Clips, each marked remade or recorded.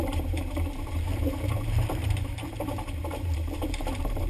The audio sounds remade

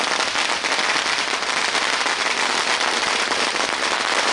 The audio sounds remade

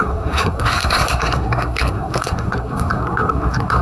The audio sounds remade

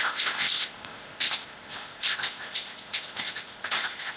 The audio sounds remade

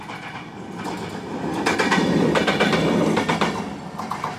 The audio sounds recorded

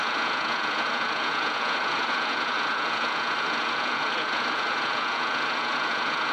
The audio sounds remade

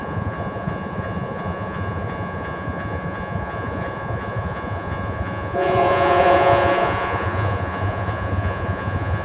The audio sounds remade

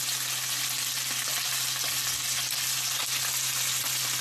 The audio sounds recorded